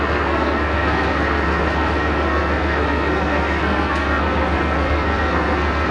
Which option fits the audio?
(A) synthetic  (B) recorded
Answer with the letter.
A